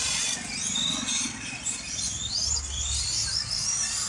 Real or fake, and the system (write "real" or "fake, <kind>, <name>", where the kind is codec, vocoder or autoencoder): real